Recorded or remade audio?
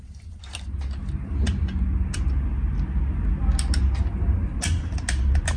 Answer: recorded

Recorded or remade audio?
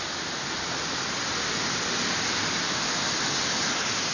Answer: recorded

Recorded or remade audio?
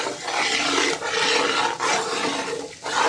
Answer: recorded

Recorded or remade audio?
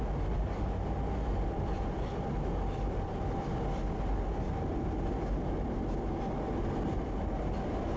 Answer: recorded